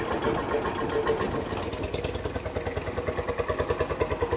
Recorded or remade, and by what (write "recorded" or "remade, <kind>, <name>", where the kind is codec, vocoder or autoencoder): recorded